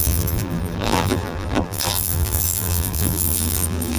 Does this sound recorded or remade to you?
remade